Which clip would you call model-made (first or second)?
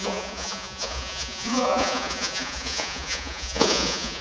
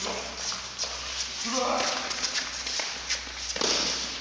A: first